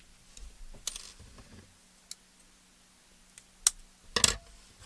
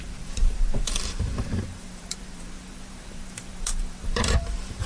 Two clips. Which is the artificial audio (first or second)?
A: second